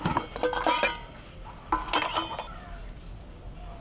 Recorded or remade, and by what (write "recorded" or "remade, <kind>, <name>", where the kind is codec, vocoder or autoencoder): recorded